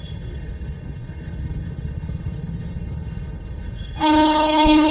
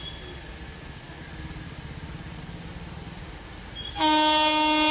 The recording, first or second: second